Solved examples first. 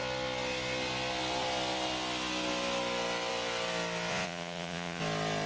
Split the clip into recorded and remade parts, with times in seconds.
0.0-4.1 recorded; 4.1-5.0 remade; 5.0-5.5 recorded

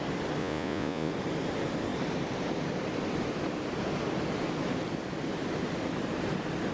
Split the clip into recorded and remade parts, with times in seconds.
0.0-0.4 recorded; 0.4-1.1 remade; 1.1-6.7 recorded

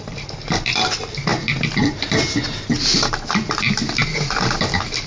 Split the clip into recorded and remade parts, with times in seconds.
0.0-5.1 recorded

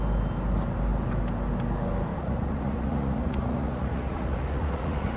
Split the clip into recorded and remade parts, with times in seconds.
0.0-2.1 recorded; 2.1-5.2 remade

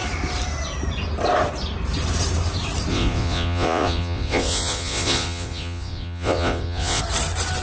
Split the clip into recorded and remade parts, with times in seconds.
0.0-2.9 recorded; 2.9-7.0 remade; 7.0-7.6 recorded

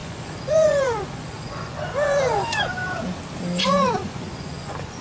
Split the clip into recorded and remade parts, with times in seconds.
0.0-2.8 remade; 2.8-3.6 recorded; 3.6-5.0 remade